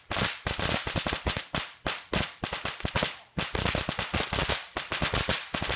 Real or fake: real